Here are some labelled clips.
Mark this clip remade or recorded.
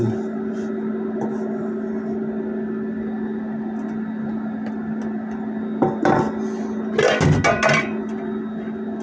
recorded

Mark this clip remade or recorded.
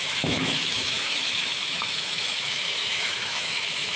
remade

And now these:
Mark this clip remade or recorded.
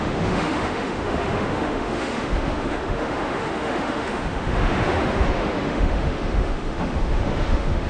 remade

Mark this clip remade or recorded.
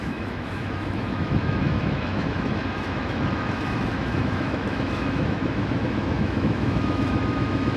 remade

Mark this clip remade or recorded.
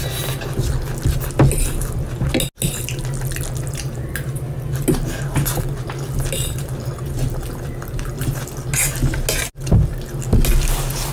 recorded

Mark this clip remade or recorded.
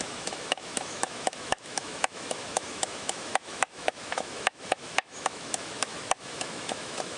remade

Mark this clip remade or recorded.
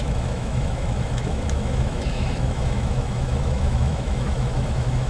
remade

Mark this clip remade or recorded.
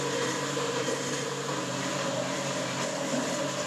recorded